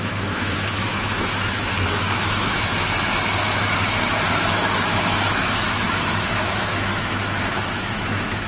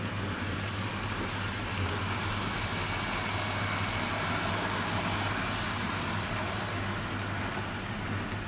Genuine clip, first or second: second